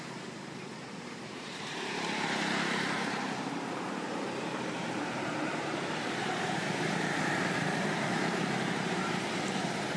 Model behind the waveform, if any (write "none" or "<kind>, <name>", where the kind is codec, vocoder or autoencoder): vocoder, BigVGAN v2